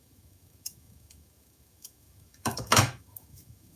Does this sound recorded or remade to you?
remade